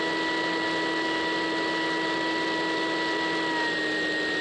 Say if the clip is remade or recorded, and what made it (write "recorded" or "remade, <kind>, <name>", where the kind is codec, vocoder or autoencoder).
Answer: recorded